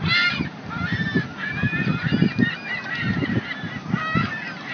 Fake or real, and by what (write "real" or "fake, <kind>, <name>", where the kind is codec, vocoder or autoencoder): real